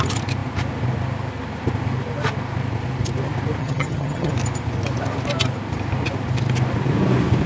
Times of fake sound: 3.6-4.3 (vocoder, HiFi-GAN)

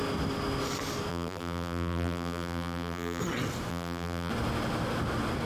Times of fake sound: 1.1-3.2 (vocoder, BigVGAN v2); 3.7-4.3